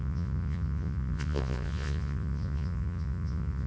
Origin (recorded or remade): remade